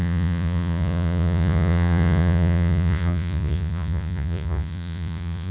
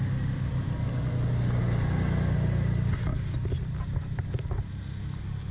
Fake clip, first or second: first